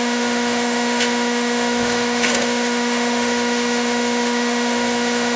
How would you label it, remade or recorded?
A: remade